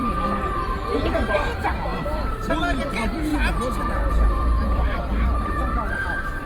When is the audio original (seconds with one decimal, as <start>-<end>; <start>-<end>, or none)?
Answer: 3.3-3.8